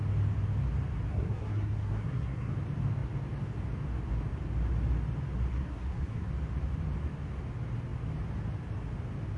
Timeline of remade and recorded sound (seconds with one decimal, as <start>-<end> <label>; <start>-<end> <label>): 0.0-1.1 recorded; 1.1-2.5 remade; 2.5-5.5 recorded; 5.5-6.3 remade; 6.3-9.4 recorded